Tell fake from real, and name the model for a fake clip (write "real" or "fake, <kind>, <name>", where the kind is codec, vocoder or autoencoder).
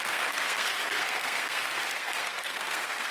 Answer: fake, codec, SNAC